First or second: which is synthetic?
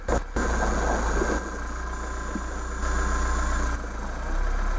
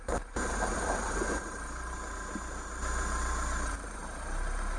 second